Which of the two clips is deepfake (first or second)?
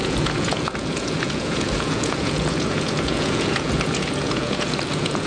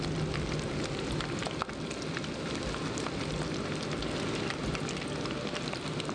first